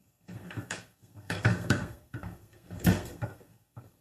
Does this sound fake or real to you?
fake